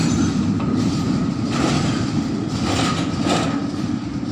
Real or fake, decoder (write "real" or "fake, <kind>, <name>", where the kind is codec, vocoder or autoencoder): real